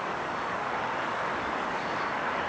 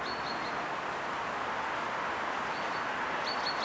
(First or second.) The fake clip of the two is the first